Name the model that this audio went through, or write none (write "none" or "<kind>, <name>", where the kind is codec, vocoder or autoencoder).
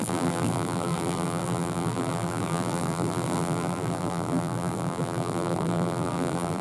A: vocoder, BigVGAN v2